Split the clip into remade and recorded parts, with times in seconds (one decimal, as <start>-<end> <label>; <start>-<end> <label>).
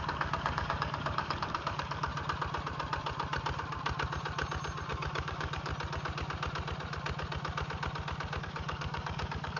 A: 0.0-2.1 remade; 2.1-4.9 recorded; 4.9-5.7 remade; 5.7-8.4 recorded; 8.4-9.6 remade